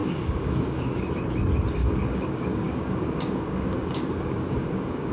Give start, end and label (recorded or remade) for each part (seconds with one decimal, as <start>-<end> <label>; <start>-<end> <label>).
0.0-1.1 remade; 1.1-1.8 recorded; 1.8-5.1 remade